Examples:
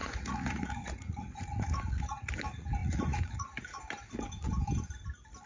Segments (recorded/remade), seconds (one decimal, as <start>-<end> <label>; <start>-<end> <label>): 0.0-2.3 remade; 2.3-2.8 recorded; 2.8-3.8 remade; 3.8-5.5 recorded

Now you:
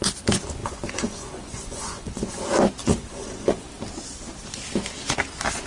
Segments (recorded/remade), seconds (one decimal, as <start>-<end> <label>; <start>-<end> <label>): 0.0-0.6 recorded; 0.6-2.4 remade; 2.4-2.8 recorded; 2.8-3.7 remade; 3.7-5.7 recorded

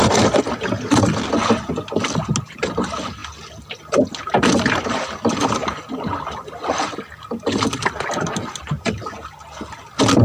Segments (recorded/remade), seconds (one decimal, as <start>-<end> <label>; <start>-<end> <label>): 0.0-10.2 recorded